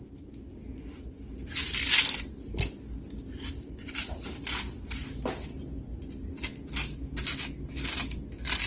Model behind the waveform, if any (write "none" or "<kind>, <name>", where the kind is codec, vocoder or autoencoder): none